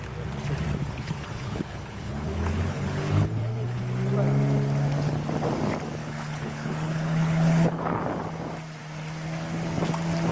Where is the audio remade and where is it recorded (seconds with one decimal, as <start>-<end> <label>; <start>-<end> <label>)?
0.0-0.8 recorded; 0.8-3.8 remade; 3.8-6.0 recorded; 6.0-8.0 remade; 8.0-10.3 recorded